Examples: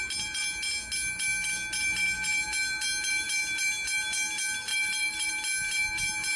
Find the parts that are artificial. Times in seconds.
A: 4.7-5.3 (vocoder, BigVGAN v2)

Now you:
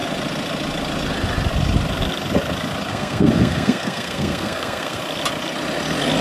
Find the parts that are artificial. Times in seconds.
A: 2.9-5.0 (codec, SNAC)

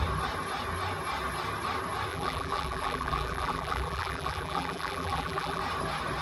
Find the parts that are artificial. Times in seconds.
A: 2.1-5.6 (vocoder, BigVGAN v2)

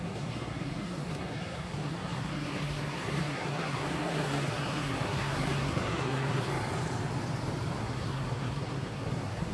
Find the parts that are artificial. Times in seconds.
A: 0.0-6.5 (codec, SNAC); 7.8-9.5

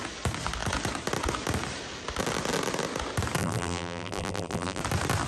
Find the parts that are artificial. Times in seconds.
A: 3.4-4.8 (vocoder, BigVGAN v2)

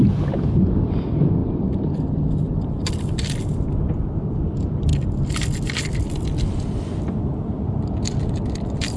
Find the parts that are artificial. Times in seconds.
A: 0.0-9.0 (vocoder, BigVGAN v2)

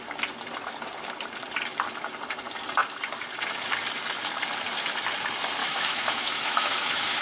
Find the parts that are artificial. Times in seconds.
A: 5.6-7.2 (autoencoder, DAC-VAE)

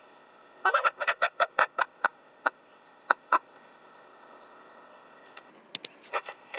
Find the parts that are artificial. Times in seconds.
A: 0.0-5.5 (codec, ZipCodec); 6.1-6.6